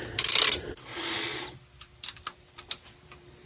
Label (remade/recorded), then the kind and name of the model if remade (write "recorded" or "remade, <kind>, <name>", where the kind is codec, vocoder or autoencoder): remade, vocoder, BigVGAN v2